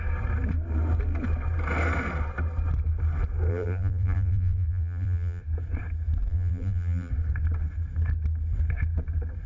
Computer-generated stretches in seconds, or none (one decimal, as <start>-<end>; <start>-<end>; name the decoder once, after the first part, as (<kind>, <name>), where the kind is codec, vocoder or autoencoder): 3.5-5.4 (vocoder, BigVGAN v2); 6.3-7.1